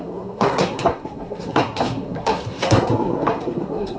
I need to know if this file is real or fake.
fake